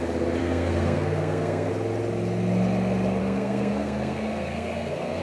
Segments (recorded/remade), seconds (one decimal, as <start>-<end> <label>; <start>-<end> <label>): 0.0-0.4 recorded; 0.4-1.7 remade; 1.7-3.2 recorded; 3.2-5.2 remade